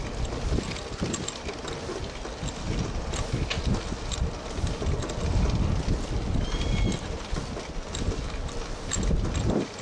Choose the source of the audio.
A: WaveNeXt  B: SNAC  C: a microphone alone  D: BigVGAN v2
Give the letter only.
C